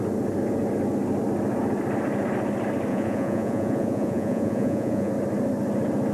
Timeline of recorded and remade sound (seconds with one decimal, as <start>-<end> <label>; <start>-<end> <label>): 0.0-2.9 recorded; 2.9-5.1 remade; 5.1-6.1 recorded